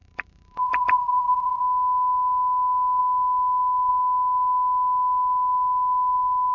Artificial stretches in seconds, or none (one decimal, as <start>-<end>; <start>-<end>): 0.0-1.6

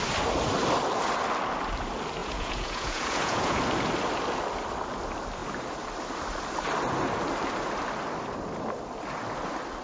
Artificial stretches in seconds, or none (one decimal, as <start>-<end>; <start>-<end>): 2.2-3.6

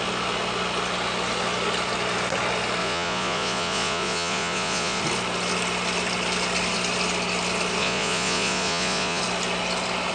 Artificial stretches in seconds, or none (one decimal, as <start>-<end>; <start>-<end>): 2.8-5.0; 7.8-9.2

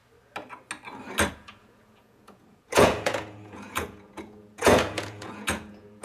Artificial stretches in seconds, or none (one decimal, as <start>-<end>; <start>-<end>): 1.3-6.0

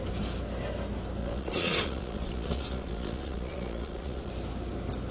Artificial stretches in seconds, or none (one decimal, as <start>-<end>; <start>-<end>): 1.2-4.3